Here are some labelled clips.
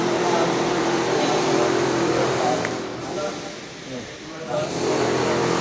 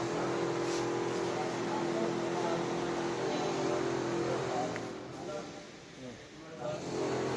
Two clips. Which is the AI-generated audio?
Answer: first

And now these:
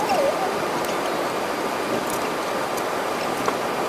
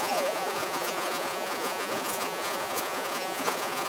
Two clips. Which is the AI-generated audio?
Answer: second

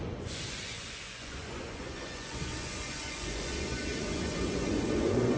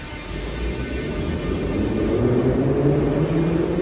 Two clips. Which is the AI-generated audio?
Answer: first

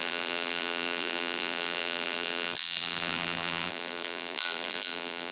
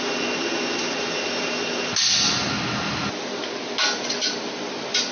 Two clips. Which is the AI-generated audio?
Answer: first